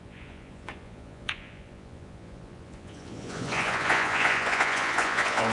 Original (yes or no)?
no